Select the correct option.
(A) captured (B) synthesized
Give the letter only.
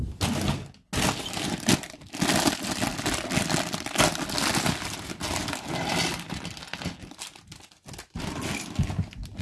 A